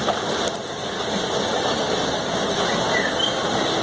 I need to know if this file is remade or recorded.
recorded